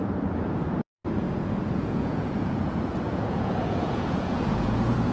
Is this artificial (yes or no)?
yes